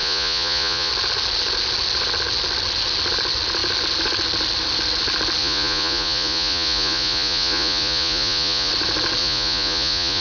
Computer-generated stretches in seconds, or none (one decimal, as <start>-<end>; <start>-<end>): 0.0-0.9; 5.4-8.7; 9.2-10.2